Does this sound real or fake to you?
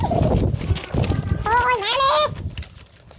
real